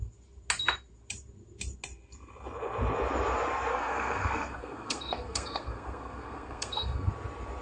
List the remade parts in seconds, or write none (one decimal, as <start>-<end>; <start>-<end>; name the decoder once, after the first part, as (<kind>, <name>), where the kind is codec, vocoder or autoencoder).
3.7-7.1 (codec, SNAC)